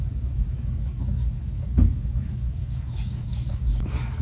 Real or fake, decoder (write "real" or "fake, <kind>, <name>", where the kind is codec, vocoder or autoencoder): fake, codec, DAC